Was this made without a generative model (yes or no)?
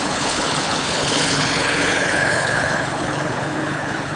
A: no